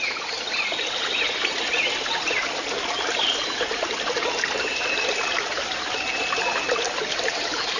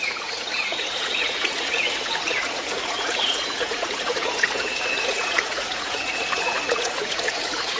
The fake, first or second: second